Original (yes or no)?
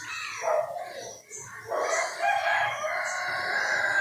yes